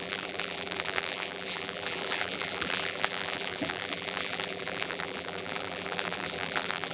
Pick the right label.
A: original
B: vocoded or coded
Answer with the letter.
B